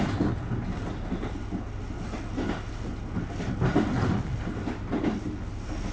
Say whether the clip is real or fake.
real